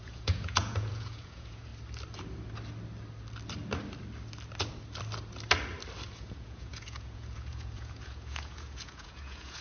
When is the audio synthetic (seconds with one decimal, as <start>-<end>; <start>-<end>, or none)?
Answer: 0.0-1.7; 6.1-9.6

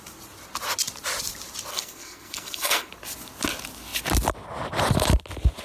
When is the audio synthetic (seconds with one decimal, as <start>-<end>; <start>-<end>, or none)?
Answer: 1.7-2.9

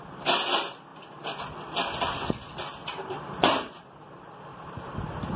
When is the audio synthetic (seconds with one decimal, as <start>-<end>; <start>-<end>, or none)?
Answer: 2.8-3.8; 4.5-5.4

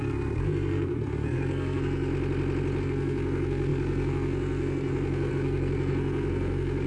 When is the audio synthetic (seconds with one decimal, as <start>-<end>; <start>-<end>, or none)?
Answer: 0.0-2.1; 2.8-6.9

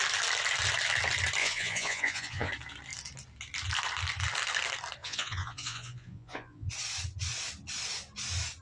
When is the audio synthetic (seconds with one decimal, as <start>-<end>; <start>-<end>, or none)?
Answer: 1.4-2.5; 5.0-6.7